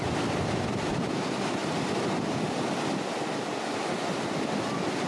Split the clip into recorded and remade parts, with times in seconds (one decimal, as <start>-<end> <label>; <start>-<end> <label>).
0.0-5.1 recorded